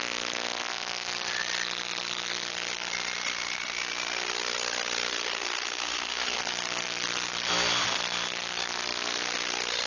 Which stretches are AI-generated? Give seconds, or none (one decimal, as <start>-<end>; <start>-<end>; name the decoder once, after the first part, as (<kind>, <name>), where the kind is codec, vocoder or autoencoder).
5.1-6.4 (codec, SNAC)